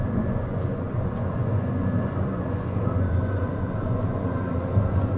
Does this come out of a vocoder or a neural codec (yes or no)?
yes